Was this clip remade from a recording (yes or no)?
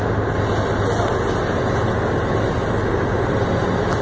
no